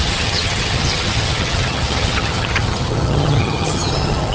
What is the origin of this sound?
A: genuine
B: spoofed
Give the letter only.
B